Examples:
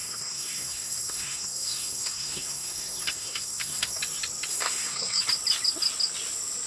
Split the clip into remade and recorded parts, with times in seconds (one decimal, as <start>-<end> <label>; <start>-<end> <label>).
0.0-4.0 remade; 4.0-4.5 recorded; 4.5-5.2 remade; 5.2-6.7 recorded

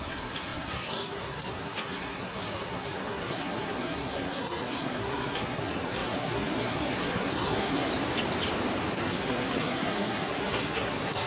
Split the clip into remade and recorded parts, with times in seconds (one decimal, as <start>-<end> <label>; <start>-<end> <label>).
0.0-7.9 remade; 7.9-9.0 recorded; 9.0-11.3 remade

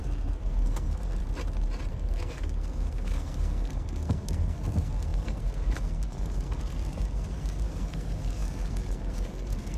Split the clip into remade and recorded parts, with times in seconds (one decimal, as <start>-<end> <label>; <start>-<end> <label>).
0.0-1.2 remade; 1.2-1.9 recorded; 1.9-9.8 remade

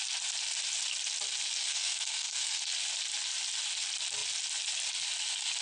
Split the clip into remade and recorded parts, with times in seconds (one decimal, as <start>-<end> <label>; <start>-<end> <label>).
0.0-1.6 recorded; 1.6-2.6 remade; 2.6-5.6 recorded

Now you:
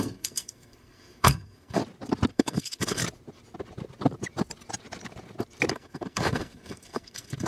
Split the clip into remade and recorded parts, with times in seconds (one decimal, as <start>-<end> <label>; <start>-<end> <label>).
0.0-1.8 remade; 1.8-2.3 recorded; 2.3-3.0 remade; 3.0-5.7 recorded; 5.7-7.5 remade

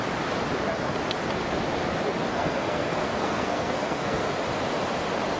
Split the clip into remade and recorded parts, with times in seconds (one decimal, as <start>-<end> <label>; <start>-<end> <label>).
0.0-2.3 recorded; 2.3-4.3 remade; 4.3-5.4 recorded

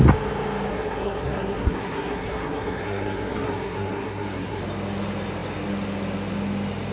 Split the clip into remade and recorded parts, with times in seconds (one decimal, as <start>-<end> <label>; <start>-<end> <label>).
0.0-0.7 recorded; 0.7-4.6 remade; 4.6-6.9 recorded

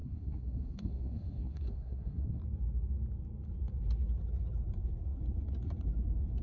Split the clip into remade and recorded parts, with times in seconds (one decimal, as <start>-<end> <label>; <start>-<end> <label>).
0.0-2.4 remade; 2.4-6.4 recorded